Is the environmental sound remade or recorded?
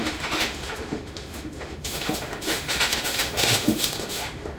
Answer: remade